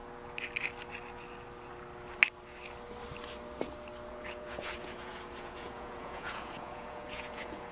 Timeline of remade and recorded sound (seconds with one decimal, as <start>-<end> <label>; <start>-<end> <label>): 0.0-4.1 recorded; 4.1-7.7 remade